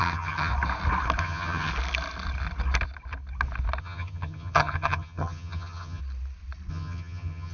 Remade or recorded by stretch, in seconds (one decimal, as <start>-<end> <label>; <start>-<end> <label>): 0.0-0.5 remade; 0.5-1.2 recorded; 1.2-1.7 remade; 1.7-3.8 recorded; 3.8-6.0 remade; 6.0-6.7 recorded; 6.7-7.5 remade